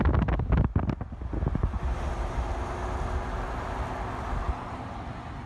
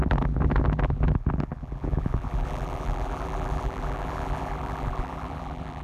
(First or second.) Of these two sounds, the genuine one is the first